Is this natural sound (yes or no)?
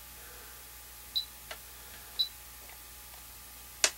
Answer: yes